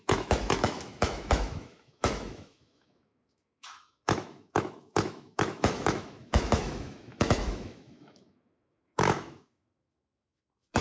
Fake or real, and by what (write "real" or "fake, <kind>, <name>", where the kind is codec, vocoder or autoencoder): fake, autoencoder, DAC-VAE